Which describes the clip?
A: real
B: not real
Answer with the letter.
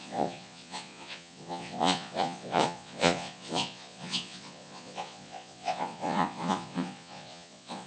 B